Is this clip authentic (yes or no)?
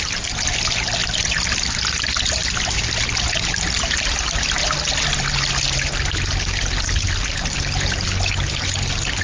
yes